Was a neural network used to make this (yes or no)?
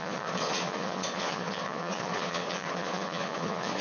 yes